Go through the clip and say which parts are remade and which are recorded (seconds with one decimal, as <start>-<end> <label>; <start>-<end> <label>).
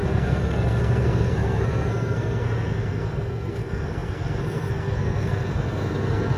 0.0-6.4 remade